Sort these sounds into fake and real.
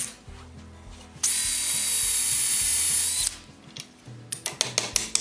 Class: real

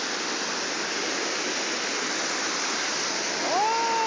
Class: real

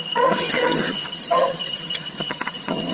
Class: fake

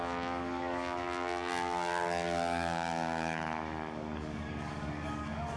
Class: fake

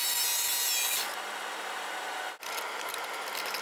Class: real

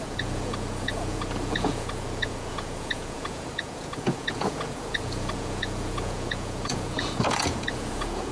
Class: fake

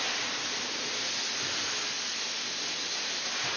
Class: real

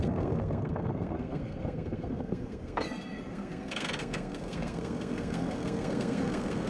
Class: fake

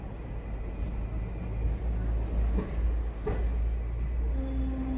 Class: real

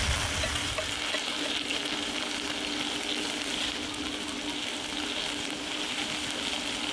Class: real